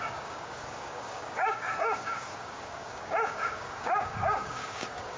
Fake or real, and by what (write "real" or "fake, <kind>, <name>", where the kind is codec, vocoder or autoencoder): fake, codec, DAC